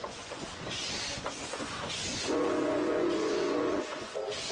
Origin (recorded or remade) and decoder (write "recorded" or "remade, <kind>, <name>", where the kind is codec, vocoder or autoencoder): remade, vocoder, Vocos